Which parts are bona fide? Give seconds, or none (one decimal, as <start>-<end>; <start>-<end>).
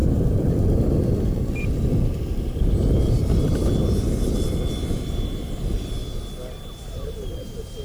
0.0-7.8